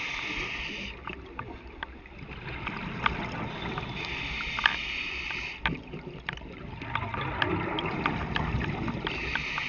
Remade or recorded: recorded